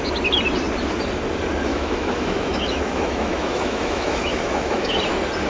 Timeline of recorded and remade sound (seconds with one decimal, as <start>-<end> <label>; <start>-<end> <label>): 0.0-1.7 recorded; 1.7-5.0 remade; 5.0-5.5 recorded

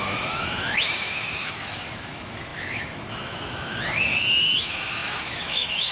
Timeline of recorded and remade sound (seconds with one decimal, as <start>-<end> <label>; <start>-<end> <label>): 0.0-5.9 remade

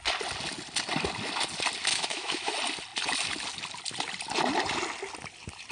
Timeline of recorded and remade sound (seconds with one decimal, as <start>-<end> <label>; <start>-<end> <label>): 0.0-1.9 recorded; 1.9-2.5 remade; 2.5-5.7 recorded

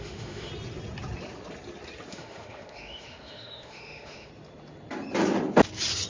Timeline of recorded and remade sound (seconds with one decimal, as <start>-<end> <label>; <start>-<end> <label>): 0.0-0.5 remade; 0.5-2.1 recorded; 2.1-4.3 remade; 4.3-6.1 recorded

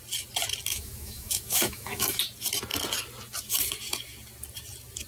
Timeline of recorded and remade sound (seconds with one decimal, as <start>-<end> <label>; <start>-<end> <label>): 0.0-0.7 recorded; 0.7-2.2 remade; 2.2-5.1 recorded

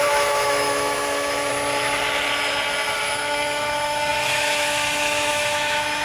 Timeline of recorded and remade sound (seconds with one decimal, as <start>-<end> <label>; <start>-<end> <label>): 0.0-1.5 remade; 1.5-3.0 recorded; 3.0-6.0 remade

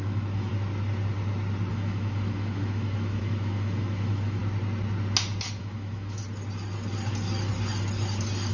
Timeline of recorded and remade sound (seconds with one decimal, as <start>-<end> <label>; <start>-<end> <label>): 0.0-0.5 remade; 0.5-1.7 recorded; 1.7-4.4 remade; 4.4-5.6 recorded; 5.6-6.2 remade; 6.2-8.5 recorded